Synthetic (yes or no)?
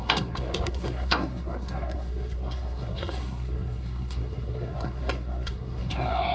yes